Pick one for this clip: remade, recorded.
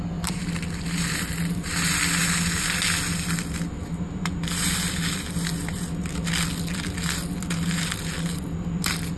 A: recorded